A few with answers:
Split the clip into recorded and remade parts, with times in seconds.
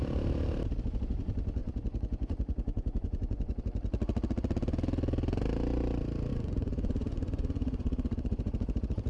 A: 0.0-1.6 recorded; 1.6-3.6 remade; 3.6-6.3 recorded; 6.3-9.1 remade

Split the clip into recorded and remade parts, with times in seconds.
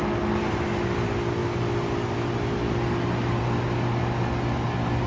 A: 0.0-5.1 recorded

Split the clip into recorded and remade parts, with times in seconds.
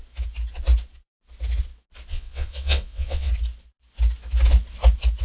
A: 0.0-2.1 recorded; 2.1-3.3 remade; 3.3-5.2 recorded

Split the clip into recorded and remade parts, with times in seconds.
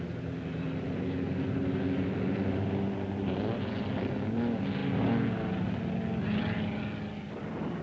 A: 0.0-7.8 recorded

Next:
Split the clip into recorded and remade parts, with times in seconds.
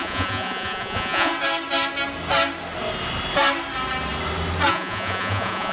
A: 0.0-1.3 remade; 1.3-4.7 recorded; 4.7-5.7 remade